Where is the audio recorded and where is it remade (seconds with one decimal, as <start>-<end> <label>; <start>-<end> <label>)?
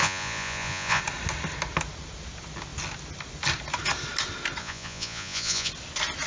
0.0-1.0 remade; 1.0-4.6 recorded; 4.6-5.7 remade; 5.7-6.3 recorded